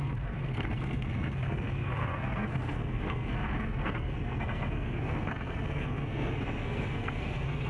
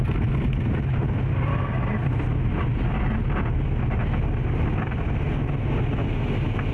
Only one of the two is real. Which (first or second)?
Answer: second